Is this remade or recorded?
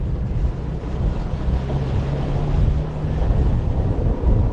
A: recorded